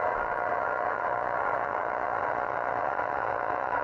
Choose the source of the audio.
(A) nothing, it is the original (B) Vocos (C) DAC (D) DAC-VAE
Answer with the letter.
B